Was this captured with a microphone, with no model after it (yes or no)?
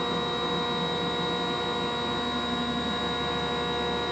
yes